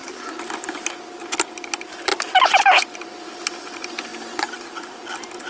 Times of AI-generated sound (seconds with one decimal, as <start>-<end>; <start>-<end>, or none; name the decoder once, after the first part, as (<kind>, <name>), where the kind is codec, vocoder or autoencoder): 0.0-0.9 (vocoder, BigVGAN v2)